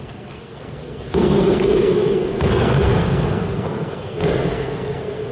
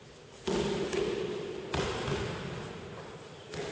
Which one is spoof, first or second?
first